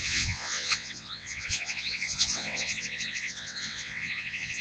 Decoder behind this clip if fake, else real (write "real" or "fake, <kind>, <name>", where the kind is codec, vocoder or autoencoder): fake, vocoder, WaveNeXt